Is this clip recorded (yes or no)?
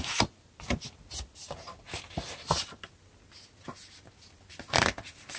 yes